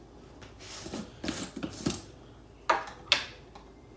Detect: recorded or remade recorded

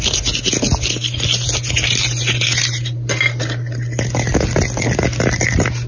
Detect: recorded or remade recorded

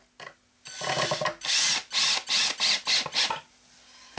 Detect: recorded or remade recorded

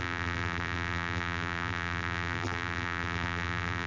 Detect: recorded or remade remade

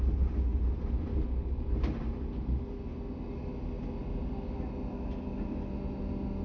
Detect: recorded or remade recorded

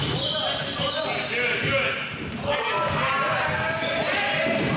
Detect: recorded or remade recorded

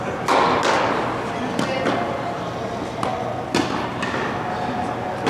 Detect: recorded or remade recorded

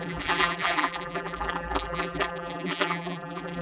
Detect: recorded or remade remade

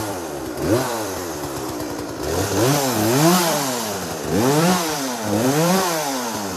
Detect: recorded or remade remade